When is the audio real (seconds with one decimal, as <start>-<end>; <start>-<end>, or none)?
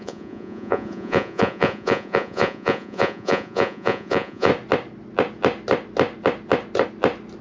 4.5-7.4